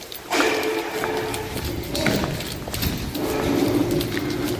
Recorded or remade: recorded